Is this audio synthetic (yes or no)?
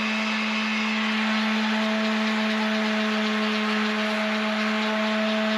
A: no